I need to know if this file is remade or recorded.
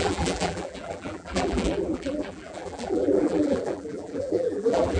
remade